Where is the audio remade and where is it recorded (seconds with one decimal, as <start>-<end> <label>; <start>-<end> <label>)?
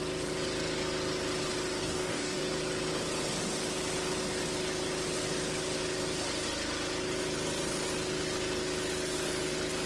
0.0-1.8 recorded; 1.8-2.4 remade; 2.4-9.9 recorded